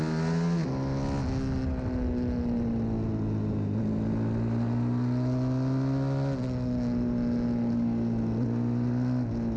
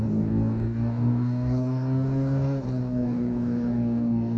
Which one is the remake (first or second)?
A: second